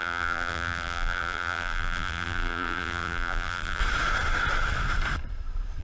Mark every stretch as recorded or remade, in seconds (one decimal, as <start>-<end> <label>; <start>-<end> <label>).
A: 0.0-3.8 remade; 3.8-5.8 recorded

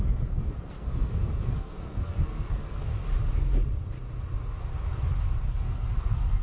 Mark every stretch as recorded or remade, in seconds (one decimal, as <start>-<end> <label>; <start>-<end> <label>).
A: 0.0-2.9 remade; 2.9-5.4 recorded; 5.4-6.4 remade

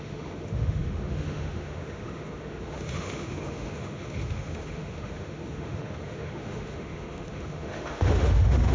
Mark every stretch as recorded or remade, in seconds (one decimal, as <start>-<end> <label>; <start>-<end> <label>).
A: 0.0-8.7 remade

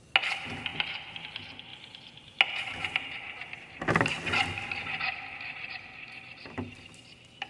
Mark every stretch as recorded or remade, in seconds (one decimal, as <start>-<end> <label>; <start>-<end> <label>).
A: 0.0-0.7 recorded; 0.7-1.2 remade; 1.2-7.5 recorded